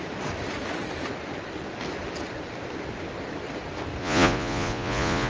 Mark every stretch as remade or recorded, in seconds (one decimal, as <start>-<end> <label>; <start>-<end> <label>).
0.0-4.0 recorded; 4.0-5.3 remade